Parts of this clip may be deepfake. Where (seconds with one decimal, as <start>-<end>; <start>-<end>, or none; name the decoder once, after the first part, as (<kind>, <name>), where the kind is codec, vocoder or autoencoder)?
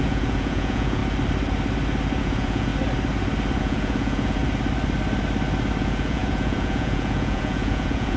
0.0-1.0 (vocoder, Vocos); 2.2-2.7; 3.6-4.4; 5.8-8.2